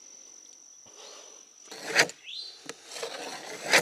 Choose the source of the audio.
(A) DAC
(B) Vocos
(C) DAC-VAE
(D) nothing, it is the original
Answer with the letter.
D